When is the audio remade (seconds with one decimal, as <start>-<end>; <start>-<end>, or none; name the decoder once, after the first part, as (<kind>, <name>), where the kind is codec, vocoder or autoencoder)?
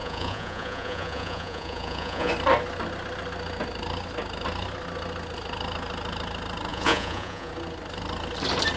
0.0-2.3 (vocoder, Vocos); 6.7-7.5